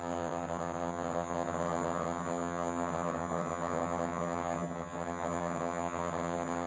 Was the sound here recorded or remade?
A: remade